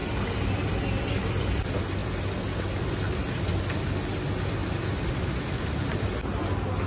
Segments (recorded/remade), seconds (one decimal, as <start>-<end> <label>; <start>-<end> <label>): 0.0-0.7 remade; 0.7-6.9 recorded